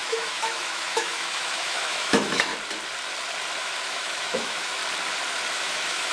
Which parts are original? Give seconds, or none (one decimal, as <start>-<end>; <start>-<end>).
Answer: 2.5-3.6; 4.8-5.5